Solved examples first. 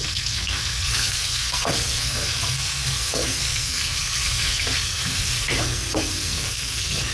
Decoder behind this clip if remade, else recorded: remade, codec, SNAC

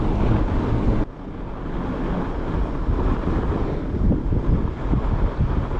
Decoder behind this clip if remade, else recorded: recorded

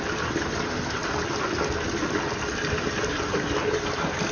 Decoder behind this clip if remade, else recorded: recorded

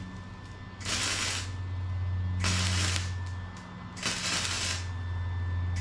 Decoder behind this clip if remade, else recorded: recorded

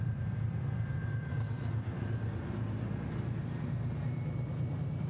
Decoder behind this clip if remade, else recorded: remade, vocoder, BigVGAN v2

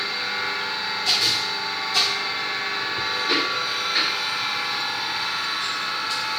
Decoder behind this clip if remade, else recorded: recorded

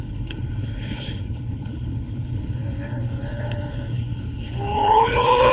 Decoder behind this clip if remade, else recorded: remade, codec, HILCodec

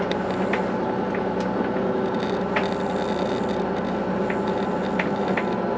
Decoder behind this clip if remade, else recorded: recorded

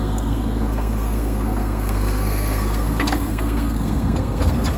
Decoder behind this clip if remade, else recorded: remade, codec, SNAC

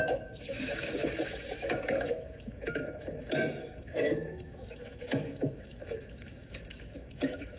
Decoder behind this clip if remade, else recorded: remade, autoencoder, DAC-VAE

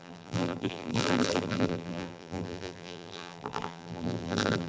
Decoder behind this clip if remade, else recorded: remade, vocoder, BigVGAN v2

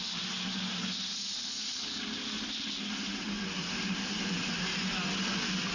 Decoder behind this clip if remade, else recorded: recorded